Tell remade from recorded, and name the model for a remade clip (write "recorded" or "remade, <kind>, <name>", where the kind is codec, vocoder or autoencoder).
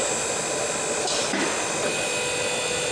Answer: recorded